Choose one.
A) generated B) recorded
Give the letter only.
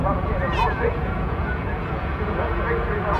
A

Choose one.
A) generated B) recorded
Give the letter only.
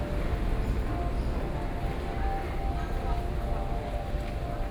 B